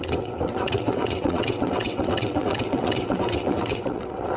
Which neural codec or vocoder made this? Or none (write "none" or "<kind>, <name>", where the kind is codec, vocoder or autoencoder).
vocoder, WaveNeXt